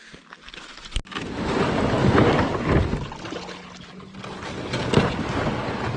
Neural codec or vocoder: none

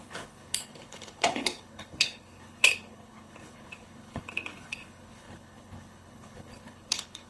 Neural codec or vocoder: codec, HILCodec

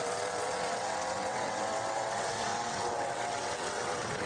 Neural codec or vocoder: vocoder, WaveNeXt